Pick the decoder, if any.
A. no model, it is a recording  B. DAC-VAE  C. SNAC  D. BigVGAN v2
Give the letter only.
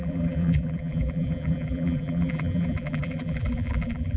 D